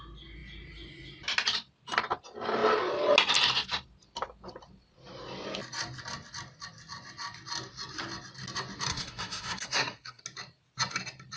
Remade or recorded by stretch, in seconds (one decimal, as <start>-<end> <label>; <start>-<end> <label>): 0.0-8.9 recorded; 8.9-10.2 remade; 10.2-11.4 recorded